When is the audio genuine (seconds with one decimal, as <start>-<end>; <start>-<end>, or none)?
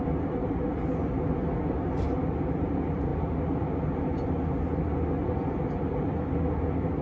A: 0.0-7.0